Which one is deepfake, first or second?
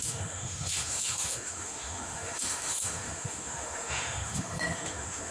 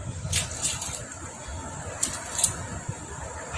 first